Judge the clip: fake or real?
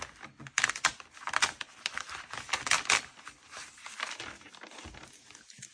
real